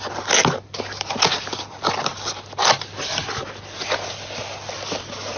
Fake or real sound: real